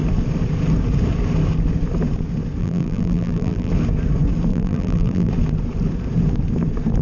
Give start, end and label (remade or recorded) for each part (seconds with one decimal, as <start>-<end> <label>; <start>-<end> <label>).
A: 0.0-2.6 recorded; 2.6-3.7 remade; 3.7-4.5 recorded; 4.5-5.3 remade; 5.3-7.0 recorded